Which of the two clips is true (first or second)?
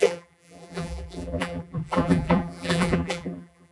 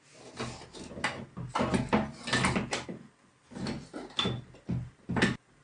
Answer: second